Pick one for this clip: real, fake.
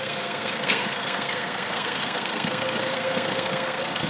fake